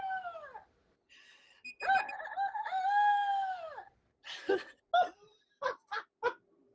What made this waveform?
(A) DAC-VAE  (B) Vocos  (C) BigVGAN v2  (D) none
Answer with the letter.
D